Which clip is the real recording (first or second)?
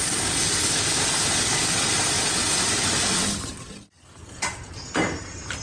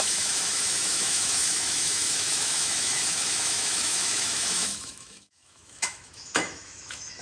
first